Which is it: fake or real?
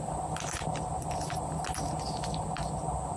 real